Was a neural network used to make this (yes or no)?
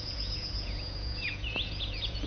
yes